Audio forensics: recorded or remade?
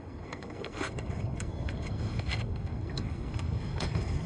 remade